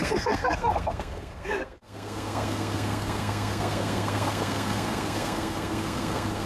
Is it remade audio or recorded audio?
remade